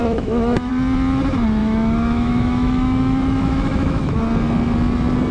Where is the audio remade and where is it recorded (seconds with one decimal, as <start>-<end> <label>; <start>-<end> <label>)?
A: 0.0-0.7 remade; 0.7-1.6 recorded; 1.6-4.2 remade; 4.2-5.3 recorded

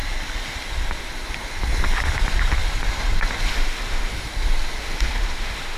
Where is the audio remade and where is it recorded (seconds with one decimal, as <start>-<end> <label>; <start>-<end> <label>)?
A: 0.0-3.5 recorded; 3.5-4.1 remade; 4.1-4.8 recorded; 4.8-5.8 remade

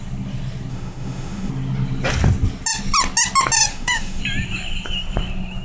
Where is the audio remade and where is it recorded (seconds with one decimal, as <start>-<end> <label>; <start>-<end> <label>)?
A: 0.0-0.7 recorded; 0.7-1.5 remade; 1.5-3.7 recorded; 3.7-4.2 remade; 4.2-5.6 recorded

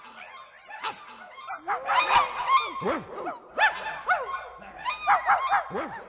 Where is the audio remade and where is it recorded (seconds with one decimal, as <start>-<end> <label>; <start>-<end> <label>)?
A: 0.0-6.1 recorded

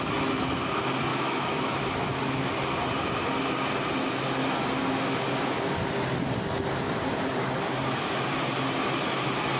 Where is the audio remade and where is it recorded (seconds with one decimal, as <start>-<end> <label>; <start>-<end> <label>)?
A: 0.0-1.1 recorded; 1.1-1.8 remade; 1.8-9.6 recorded